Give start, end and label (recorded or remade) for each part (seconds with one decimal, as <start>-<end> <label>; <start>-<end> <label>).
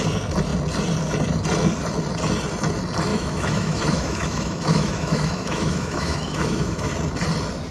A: 0.0-3.1 recorded; 3.1-6.9 remade; 6.9-7.7 recorded